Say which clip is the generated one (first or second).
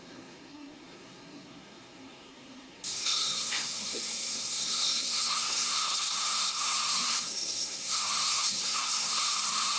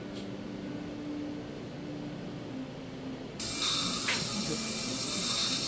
first